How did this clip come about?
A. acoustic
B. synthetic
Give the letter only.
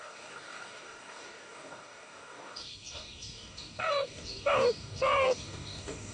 B